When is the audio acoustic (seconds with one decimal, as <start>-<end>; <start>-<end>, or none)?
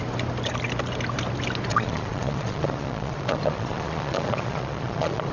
0.0-1.7